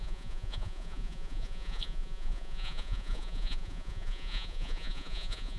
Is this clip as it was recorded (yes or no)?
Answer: no